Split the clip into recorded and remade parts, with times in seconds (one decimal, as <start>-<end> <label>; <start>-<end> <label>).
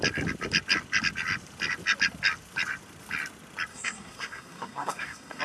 0.0-3.7 recorded; 3.7-5.4 remade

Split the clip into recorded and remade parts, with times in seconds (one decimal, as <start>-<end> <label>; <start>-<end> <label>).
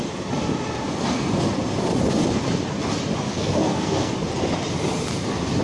0.0-3.3 recorded; 3.3-4.1 remade; 4.1-5.6 recorded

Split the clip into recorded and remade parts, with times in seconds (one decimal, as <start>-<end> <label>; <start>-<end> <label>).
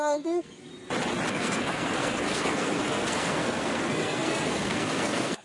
0.0-0.7 remade; 0.7-1.3 recorded; 1.3-5.4 remade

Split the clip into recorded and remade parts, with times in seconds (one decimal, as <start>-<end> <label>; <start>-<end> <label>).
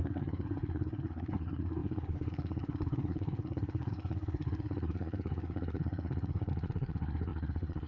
0.0-7.9 remade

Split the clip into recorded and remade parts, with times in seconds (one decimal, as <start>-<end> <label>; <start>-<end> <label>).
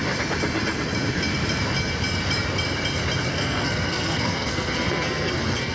0.0-3.3 recorded; 3.3-5.7 remade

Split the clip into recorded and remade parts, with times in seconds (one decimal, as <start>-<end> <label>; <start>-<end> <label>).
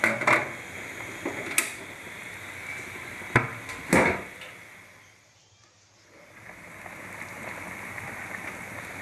0.0-9.0 recorded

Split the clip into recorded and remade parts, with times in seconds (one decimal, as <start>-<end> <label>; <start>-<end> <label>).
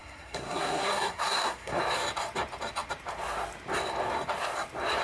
0.0-1.8 remade; 1.8-5.0 recorded